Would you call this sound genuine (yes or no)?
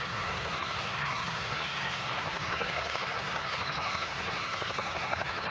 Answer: no